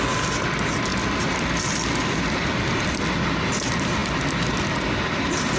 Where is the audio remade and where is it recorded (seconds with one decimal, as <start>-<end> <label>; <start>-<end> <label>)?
0.0-0.9 recorded; 0.9-3.1 remade; 3.1-5.6 recorded